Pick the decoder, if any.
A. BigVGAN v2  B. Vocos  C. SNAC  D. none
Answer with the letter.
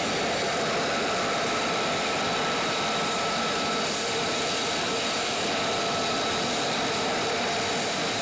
A